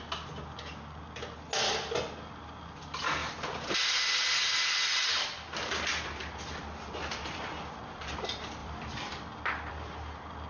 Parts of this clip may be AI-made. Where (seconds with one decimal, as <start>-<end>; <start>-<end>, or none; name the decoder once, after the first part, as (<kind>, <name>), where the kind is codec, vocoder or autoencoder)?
3.2-4.0 (vocoder, BigVGAN v2); 8.6-9.7